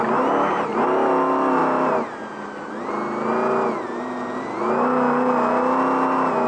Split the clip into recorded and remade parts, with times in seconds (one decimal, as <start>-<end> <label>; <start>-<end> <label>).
0.0-6.5 recorded